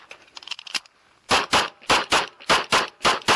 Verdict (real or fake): fake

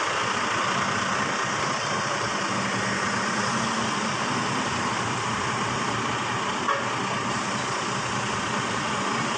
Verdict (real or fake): real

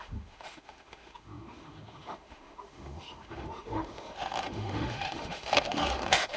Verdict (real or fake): fake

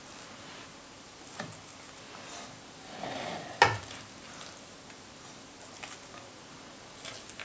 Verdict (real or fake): real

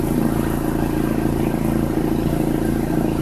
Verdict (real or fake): real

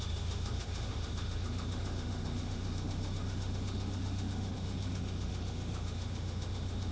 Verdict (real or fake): fake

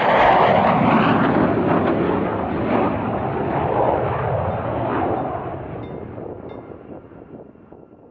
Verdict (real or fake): real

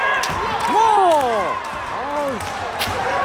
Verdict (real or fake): real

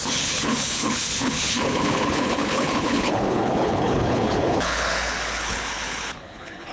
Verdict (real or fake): fake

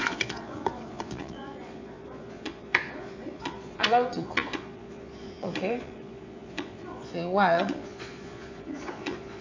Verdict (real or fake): fake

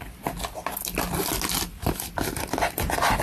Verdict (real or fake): real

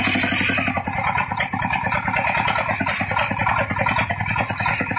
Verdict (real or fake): real